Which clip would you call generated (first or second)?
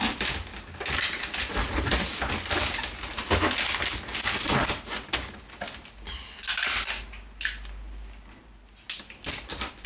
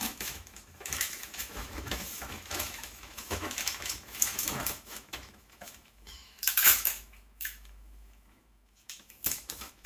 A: second